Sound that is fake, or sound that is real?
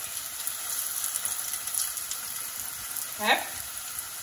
real